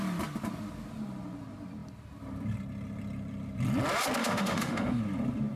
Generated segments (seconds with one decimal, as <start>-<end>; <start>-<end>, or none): 4.2-5.0